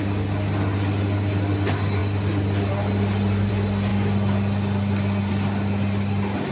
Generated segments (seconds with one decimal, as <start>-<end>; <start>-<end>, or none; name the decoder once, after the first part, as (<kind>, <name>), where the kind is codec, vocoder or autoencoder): none